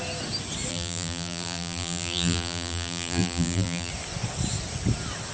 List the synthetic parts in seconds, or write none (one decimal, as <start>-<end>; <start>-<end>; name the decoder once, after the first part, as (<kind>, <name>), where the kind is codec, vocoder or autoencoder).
0.7-3.9 (vocoder, BigVGAN v2)